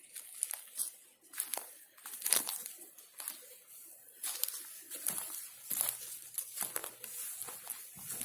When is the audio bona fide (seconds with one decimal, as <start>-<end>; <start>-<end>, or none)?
0.0-1.5; 3.0-8.2